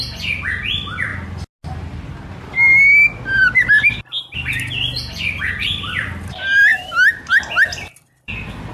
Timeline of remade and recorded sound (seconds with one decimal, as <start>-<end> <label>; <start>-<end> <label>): 0.0-8.7 recorded